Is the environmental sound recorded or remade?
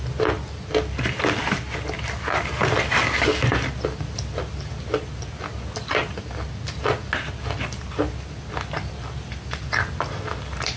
recorded